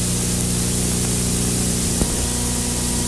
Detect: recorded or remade recorded